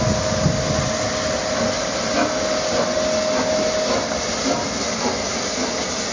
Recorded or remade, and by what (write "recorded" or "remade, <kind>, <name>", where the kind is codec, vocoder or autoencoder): recorded